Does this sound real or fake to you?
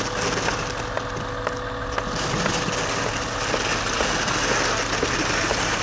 real